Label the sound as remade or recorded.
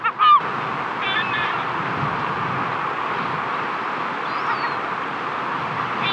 recorded